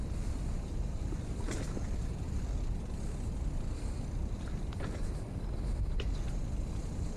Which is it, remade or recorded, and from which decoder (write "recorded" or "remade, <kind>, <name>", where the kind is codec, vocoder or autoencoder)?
recorded